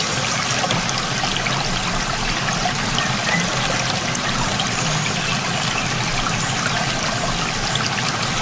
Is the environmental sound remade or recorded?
recorded